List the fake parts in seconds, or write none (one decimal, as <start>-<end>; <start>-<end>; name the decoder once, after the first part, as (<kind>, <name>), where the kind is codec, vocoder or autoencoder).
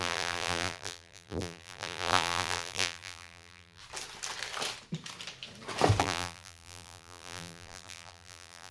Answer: 0.0-3.8 (vocoder, BigVGAN v2); 6.0-8.7